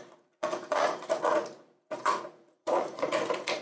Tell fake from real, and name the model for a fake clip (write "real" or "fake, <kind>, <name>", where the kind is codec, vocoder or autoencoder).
fake, vocoder, Vocos